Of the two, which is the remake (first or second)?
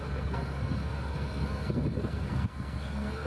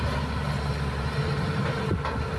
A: first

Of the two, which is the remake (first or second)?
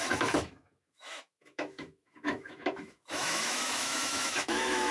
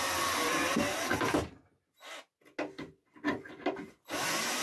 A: first